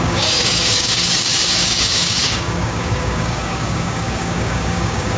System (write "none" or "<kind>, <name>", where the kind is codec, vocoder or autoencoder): codec, DAC